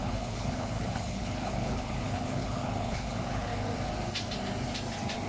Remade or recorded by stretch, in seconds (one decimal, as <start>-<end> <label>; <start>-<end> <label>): 0.0-3.5 remade; 3.5-5.3 recorded